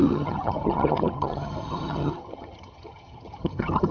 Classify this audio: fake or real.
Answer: fake